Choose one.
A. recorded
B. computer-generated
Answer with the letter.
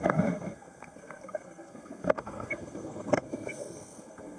B